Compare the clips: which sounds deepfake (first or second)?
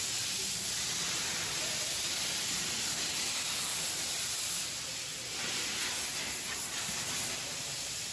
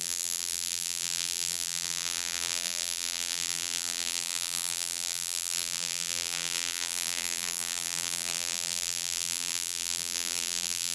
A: second